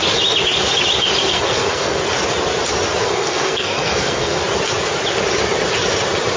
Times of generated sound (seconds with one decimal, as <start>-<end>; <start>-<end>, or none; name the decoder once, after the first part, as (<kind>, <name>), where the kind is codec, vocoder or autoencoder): 1.3-2.0 (codec, SNAC); 3.0-4.4